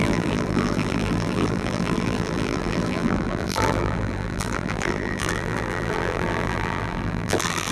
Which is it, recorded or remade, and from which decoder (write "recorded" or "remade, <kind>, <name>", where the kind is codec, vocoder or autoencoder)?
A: remade, vocoder, BigVGAN v2